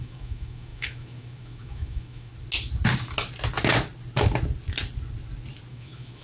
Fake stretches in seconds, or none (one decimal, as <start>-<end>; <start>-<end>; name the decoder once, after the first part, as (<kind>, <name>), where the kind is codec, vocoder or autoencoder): 0.0-2.3 (autoencoder, DAC-VAE); 5.7-6.2